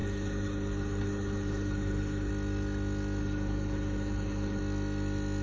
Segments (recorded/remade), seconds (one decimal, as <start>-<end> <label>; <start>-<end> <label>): 0.0-2.3 remade; 2.3-3.2 recorded; 3.2-4.6 remade; 4.6-5.4 recorded